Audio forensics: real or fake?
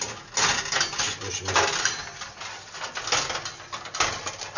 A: real